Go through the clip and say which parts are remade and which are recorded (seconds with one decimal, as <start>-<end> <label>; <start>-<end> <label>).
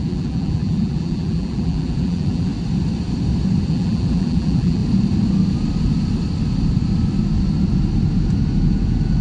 0.0-2.5 remade; 2.5-3.7 recorded; 3.7-4.8 remade; 4.8-9.2 recorded